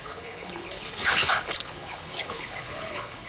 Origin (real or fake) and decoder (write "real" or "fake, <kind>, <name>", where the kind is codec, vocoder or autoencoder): fake, codec, HILCodec